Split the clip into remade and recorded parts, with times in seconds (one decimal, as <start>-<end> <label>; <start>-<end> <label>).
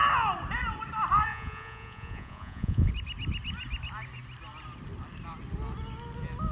0.0-1.3 recorded; 1.3-2.9 remade; 2.9-6.5 recorded